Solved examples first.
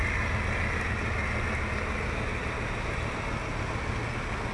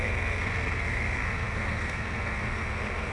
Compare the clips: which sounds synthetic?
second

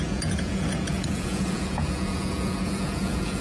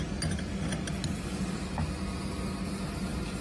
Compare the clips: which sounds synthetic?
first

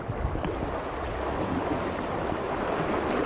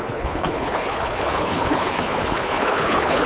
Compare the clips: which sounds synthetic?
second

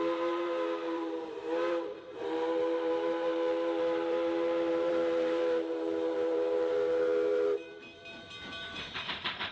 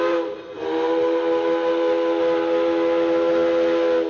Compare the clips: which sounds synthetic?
first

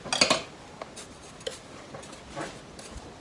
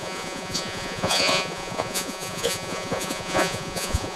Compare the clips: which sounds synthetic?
second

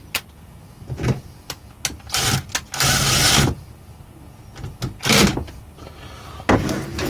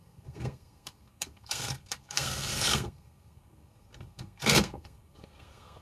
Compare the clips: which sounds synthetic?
second